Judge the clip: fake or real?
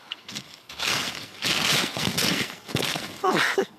fake